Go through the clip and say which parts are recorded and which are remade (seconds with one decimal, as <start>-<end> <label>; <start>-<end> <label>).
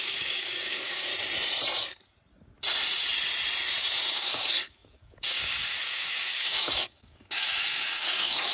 0.0-1.1 remade; 1.1-4.1 recorded; 4.1-8.5 remade